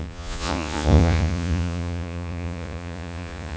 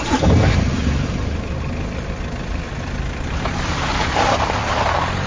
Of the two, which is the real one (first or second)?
second